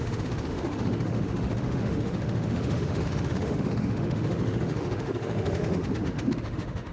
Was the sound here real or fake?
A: fake